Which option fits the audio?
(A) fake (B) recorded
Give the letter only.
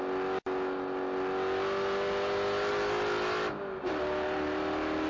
B